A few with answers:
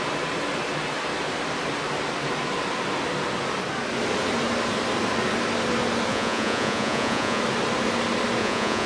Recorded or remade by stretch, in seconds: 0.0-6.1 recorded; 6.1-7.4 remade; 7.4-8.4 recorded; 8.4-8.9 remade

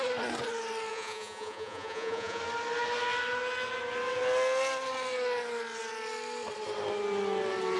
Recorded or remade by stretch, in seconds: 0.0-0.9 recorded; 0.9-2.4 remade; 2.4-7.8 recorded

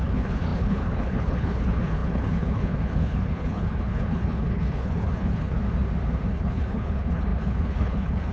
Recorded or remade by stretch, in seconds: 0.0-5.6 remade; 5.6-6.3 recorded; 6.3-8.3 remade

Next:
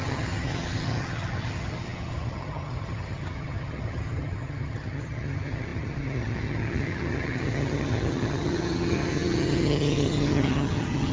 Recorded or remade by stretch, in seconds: 0.0-11.1 remade